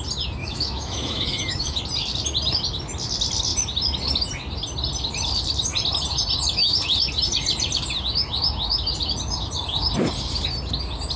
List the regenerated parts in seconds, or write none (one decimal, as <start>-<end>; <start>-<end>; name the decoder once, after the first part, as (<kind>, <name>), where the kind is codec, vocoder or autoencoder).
0.4-1.8 (autoencoder, DAC-VAE)